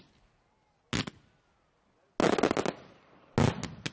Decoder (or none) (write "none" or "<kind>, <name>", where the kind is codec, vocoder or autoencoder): none